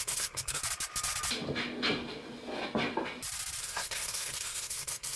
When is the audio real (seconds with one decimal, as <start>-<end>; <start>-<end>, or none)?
0.6-3.6